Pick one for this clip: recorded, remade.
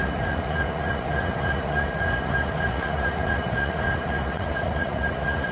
remade